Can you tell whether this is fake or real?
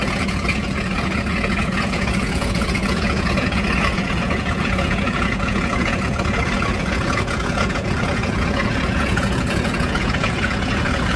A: fake